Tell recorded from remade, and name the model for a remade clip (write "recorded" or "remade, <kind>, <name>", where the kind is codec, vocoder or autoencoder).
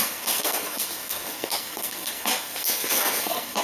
remade, codec, SNAC